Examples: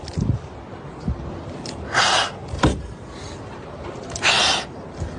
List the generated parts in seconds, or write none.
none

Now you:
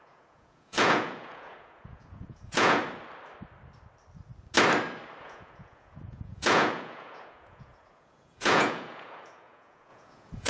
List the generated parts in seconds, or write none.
0.0-2.8 (vocoder, Vocos); 5.2-10.5

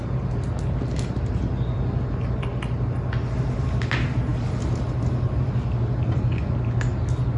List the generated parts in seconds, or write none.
none

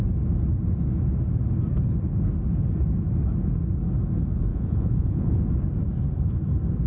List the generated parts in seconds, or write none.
4.5-5.4 (vocoder, Vocos)

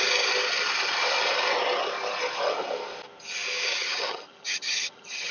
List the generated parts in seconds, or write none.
3.7-5.3 (vocoder, HiFi-GAN)

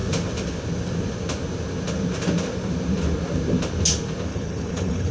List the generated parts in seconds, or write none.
4.3-5.1 (codec, HILCodec)